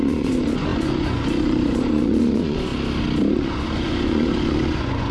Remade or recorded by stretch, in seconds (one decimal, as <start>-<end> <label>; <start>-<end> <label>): 0.0-2.7 remade; 2.7-3.3 recorded; 3.3-5.1 remade